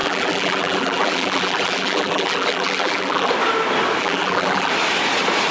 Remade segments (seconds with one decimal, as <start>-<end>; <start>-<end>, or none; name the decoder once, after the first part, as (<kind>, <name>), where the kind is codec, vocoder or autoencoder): 0.0-3.3 (vocoder, BigVGAN v2); 4.0-4.7